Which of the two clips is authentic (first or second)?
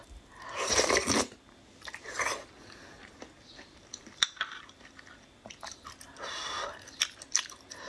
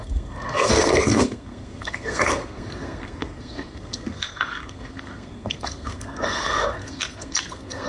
first